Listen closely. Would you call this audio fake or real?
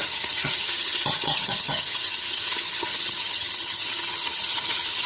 fake